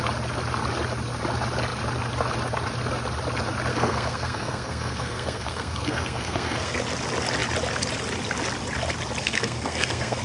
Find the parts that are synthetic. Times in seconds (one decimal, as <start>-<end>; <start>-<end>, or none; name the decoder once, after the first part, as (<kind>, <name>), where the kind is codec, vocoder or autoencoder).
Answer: 3.7-6.8 (codec, SNAC); 9.2-10.2